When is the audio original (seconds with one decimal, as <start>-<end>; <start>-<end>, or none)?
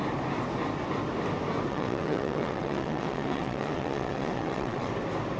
0.0-1.7; 4.9-5.4